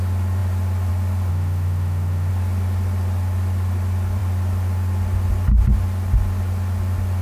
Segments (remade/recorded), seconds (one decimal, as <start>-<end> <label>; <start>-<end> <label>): 0.0-1.3 recorded; 1.3-2.3 remade; 2.3-7.2 recorded